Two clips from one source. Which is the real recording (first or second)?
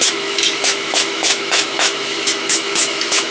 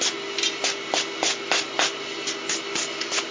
second